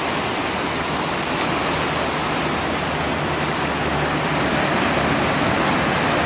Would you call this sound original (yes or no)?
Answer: yes